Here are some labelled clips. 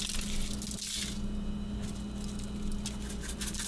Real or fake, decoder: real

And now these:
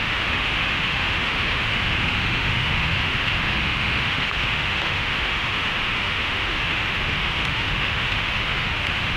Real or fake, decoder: fake, autoencoder, DAC-VAE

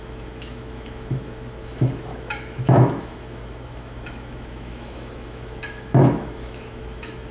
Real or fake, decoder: fake, autoencoder, DAC-VAE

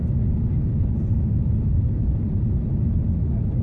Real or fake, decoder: real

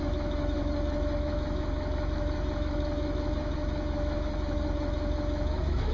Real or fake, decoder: fake, autoencoder, DAC-VAE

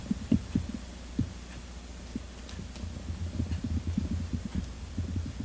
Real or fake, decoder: real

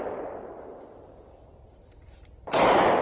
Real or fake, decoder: real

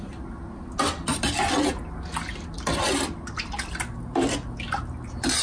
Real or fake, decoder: real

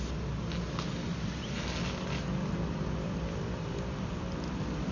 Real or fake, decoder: real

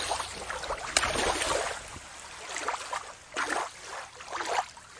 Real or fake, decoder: real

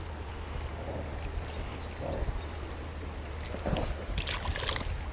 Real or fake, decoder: real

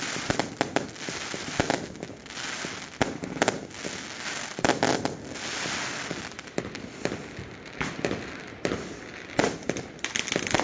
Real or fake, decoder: real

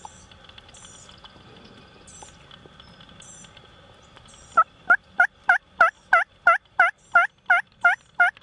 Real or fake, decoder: real